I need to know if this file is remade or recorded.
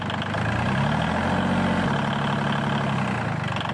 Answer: recorded